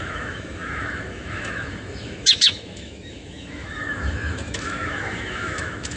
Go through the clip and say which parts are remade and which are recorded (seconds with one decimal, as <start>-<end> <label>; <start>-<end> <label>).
0.0-6.0 remade